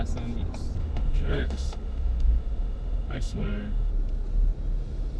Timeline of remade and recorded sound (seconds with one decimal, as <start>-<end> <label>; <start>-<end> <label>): 0.0-0.8 recorded; 0.8-3.9 remade; 3.9-5.2 recorded